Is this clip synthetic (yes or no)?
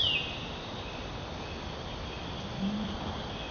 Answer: no